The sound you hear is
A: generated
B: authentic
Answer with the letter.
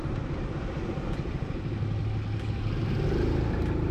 B